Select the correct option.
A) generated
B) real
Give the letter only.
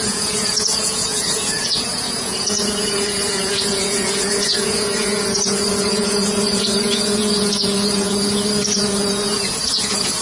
A